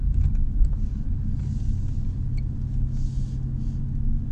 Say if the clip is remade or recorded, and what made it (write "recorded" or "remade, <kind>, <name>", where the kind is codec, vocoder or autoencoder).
recorded